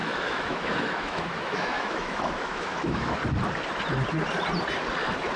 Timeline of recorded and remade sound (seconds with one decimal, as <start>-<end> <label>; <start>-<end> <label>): 0.0-3.2 remade; 3.2-5.4 recorded